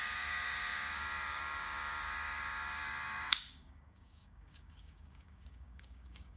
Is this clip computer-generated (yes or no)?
yes